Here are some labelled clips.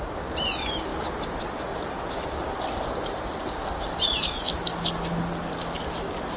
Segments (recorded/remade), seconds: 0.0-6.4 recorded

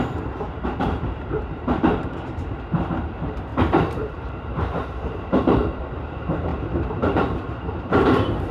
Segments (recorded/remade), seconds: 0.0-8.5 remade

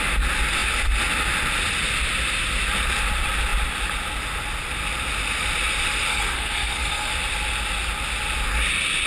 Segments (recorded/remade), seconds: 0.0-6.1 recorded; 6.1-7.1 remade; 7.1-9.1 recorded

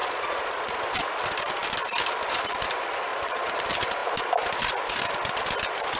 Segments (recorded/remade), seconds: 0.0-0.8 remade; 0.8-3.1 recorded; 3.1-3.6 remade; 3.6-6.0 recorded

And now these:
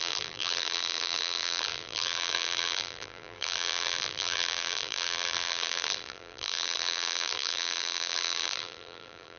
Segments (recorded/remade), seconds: 0.0-9.4 remade

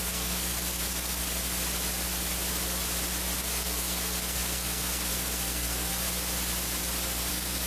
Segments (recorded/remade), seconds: 0.0-1.2 remade; 1.2-3.4 recorded; 3.4-5.9 remade; 5.9-7.3 recorded; 7.3-7.7 remade